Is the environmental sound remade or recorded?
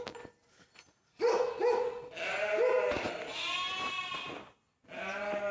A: recorded